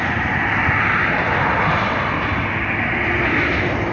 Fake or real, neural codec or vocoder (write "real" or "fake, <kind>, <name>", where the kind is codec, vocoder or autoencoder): real